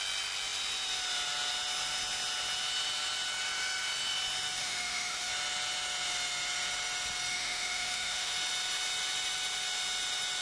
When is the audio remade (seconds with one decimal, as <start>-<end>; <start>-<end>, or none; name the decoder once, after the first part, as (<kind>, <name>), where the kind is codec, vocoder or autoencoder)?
4.6-5.3 (autoencoder, DAC-VAE); 7.3-8.3